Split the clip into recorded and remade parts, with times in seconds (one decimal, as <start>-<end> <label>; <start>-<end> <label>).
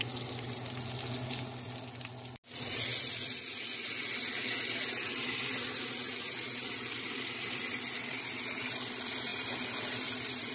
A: 0.0-10.5 recorded